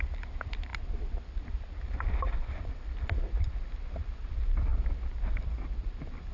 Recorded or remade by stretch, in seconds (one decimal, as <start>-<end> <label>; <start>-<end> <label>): 0.0-6.3 remade